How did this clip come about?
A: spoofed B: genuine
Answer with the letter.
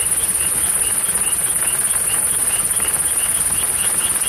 B